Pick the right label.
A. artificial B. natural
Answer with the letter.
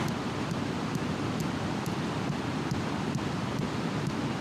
B